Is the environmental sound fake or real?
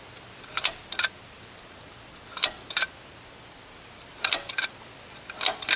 real